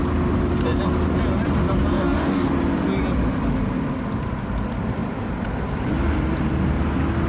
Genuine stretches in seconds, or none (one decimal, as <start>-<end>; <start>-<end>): 0.0-1.9; 2.5-7.3